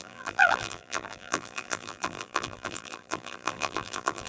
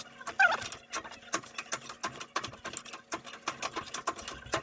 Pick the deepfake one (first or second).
first